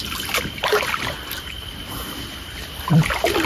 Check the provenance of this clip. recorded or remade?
remade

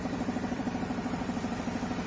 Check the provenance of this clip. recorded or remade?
remade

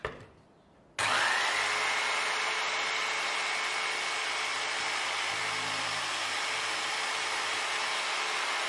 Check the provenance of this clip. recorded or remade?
recorded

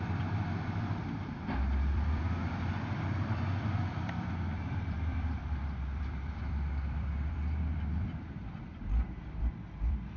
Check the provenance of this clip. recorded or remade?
remade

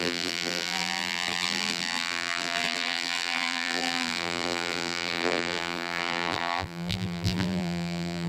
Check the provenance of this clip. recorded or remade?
remade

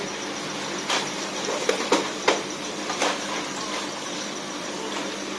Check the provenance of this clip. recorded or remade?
remade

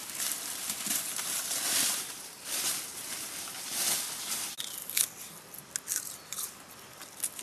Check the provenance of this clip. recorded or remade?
recorded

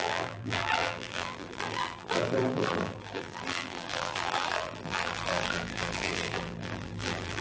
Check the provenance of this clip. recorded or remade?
remade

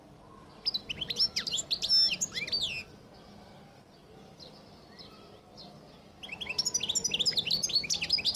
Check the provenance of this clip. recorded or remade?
recorded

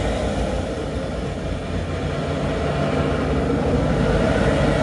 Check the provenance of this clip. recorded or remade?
recorded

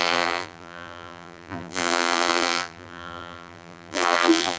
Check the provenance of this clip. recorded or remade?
remade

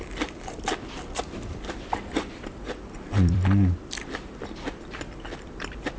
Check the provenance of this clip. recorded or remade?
remade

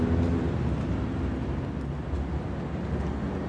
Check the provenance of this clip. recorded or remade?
recorded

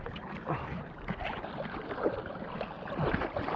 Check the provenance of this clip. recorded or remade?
recorded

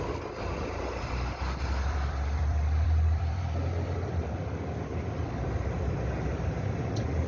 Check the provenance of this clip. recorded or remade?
remade